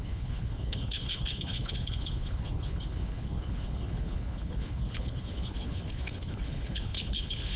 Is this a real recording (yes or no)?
no